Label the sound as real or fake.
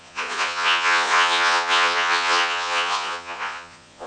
fake